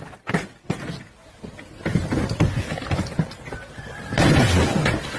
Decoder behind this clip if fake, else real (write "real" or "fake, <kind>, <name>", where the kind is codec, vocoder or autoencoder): real